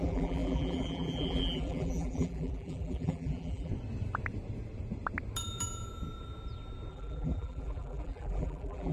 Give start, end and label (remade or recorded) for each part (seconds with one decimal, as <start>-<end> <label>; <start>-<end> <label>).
0.0-3.7 remade; 3.7-6.9 recorded; 6.9-8.9 remade